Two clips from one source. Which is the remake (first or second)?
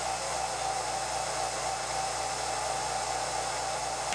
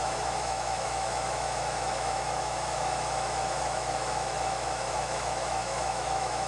second